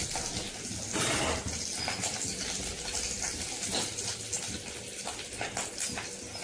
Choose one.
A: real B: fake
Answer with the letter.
A